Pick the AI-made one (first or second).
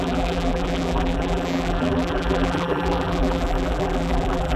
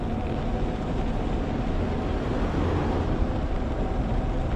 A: first